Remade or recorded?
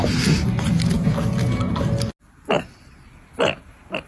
recorded